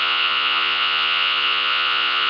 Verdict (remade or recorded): remade